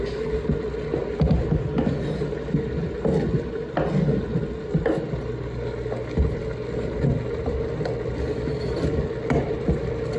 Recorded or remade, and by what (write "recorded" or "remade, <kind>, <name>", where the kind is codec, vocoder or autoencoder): recorded